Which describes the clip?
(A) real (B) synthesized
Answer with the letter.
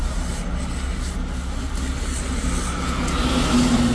A